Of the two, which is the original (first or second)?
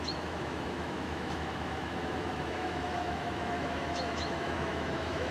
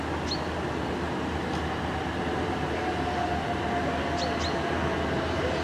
second